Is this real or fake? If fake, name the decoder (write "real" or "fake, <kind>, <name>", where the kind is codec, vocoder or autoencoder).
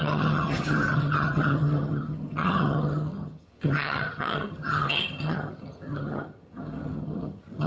fake, vocoder, HiFi-GAN